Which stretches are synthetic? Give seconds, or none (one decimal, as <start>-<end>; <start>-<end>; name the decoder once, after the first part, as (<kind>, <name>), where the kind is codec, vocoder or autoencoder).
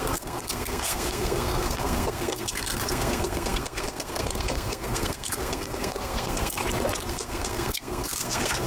0.0-6.6 (codec, SNAC); 7.1-8.7